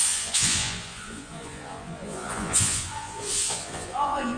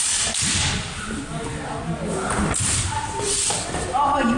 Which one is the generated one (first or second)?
first